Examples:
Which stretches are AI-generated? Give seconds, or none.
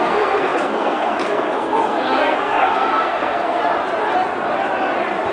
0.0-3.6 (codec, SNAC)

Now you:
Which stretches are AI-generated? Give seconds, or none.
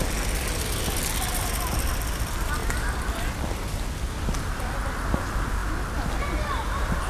none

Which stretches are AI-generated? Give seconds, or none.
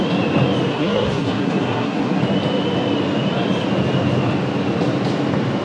0.7-2.2 (codec, SNAC)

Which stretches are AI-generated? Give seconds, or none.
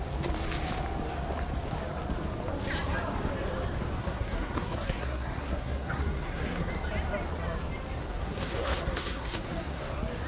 4.0-6.7 (codec, SNAC); 8.0-9.8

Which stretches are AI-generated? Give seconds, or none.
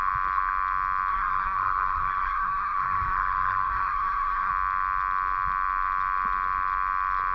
1.1-4.5 (codec, SNAC)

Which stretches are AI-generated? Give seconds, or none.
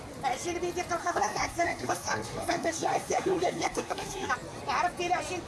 1.0-4.3 (codec, SNAC)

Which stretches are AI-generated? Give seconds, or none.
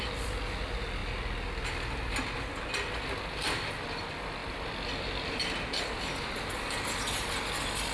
none